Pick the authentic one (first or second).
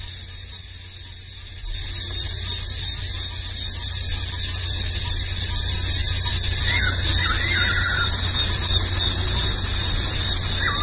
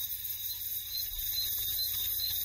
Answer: first